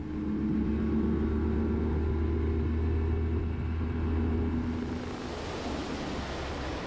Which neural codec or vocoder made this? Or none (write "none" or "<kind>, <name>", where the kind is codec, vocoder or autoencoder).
none